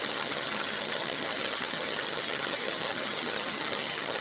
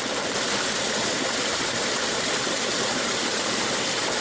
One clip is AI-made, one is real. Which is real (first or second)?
second